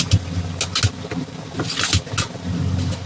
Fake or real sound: real